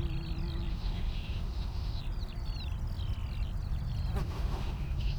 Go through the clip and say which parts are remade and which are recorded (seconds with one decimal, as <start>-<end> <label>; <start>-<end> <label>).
0.0-0.7 recorded; 0.7-2.0 remade; 2.0-4.2 recorded; 4.2-5.2 remade